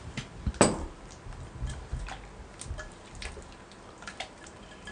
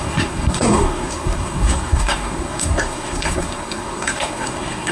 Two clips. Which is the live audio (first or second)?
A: first